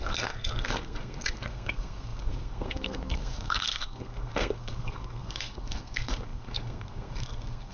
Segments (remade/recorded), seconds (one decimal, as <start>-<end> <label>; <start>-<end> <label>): 0.0-7.7 remade